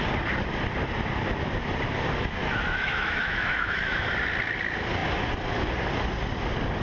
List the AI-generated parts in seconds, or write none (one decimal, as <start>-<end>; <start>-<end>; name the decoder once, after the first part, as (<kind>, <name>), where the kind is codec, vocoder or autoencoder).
2.4-4.1 (autoencoder, DAC-VAE)